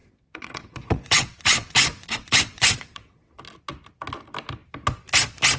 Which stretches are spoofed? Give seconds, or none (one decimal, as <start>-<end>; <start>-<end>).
0.0-3.3